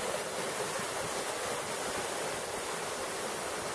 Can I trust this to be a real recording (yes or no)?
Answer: yes